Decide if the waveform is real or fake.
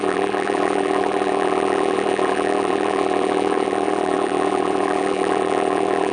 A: fake